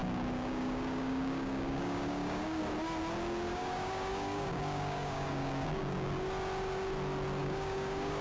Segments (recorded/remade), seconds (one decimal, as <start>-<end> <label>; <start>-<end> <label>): 0.0-2.6 remade; 2.6-3.5 recorded; 3.5-6.1 remade; 6.1-7.4 recorded; 7.4-8.2 remade